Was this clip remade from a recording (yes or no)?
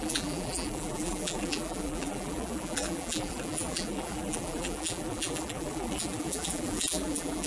yes